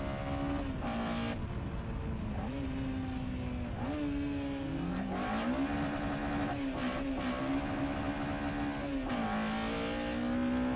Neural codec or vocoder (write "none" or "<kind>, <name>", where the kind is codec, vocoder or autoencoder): none